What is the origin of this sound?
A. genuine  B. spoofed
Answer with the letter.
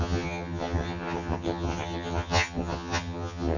B